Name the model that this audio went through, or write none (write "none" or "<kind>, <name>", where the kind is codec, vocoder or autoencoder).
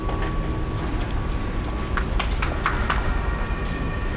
none